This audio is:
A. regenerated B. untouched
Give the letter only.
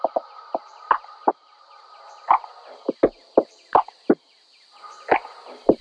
B